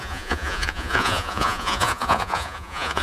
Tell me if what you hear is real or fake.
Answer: fake